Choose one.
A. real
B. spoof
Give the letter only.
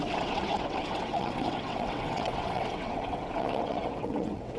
B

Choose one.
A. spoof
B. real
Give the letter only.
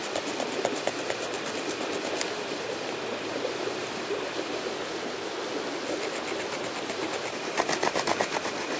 B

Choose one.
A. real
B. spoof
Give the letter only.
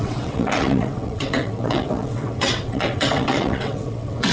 B